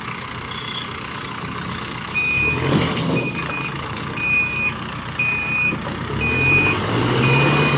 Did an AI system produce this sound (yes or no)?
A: yes